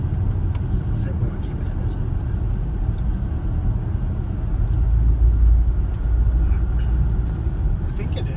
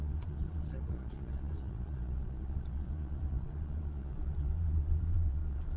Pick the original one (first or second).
first